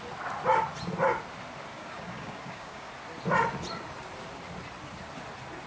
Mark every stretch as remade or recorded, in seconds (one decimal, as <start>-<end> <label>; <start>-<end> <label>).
0.0-1.7 recorded; 1.7-2.9 remade; 2.9-5.7 recorded